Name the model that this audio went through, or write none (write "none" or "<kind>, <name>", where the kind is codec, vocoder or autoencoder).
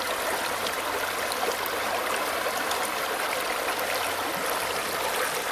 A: none